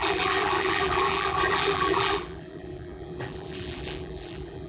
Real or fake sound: fake